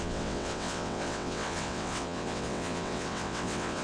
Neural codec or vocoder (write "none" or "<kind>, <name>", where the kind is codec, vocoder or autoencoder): vocoder, WaveNeXt